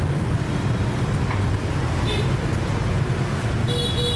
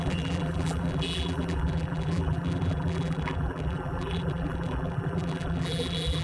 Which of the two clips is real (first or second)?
first